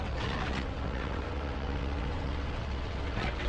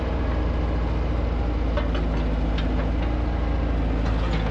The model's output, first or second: first